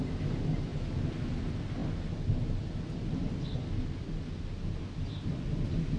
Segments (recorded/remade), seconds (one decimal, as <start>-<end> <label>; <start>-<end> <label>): 0.0-6.0 recorded